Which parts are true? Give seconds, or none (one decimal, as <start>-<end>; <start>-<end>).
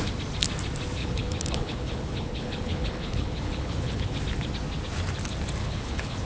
0.0-1.0; 4.2-5.6